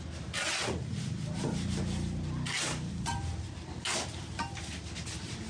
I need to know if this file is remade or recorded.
recorded